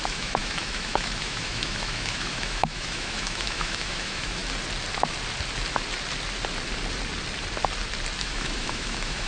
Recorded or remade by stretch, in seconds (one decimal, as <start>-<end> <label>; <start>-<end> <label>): 0.0-4.4 remade; 4.4-8.2 recorded; 8.2-9.3 remade